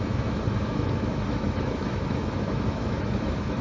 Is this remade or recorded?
remade